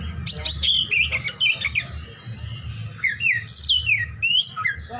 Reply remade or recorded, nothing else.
recorded